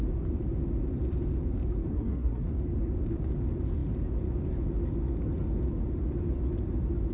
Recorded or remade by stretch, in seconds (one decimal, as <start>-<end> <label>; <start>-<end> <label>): 0.0-1.9 recorded; 1.9-2.5 remade; 2.5-7.1 recorded